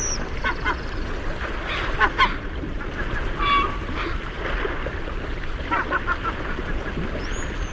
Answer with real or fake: real